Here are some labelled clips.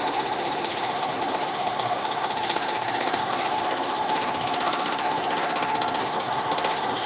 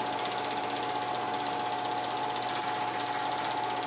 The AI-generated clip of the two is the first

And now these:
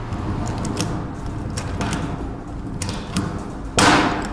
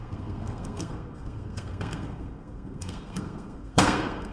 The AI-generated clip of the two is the second